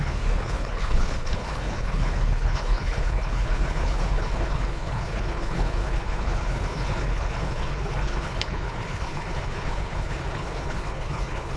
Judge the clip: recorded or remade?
remade